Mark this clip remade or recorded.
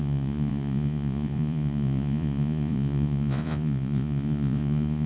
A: remade